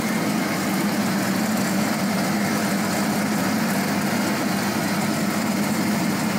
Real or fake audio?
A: real